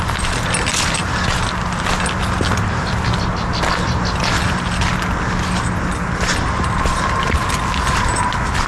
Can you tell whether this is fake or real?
real